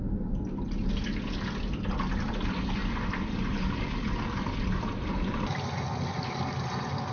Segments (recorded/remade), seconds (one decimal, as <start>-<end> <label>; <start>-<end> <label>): 0.0-2.8 recorded; 2.8-7.1 remade